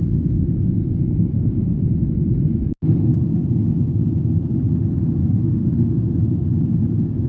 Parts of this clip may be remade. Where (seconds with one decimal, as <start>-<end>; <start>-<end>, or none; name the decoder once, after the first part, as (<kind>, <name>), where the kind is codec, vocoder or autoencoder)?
1.3-1.8 (autoencoder, DAC-VAE); 5.2-6.1